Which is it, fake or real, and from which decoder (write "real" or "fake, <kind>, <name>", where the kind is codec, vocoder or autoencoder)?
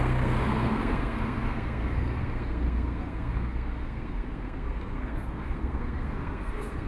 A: fake, codec, SNAC